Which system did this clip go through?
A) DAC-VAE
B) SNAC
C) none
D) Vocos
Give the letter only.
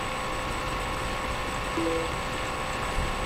C